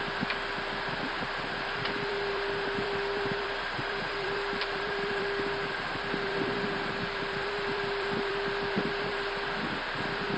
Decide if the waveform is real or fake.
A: fake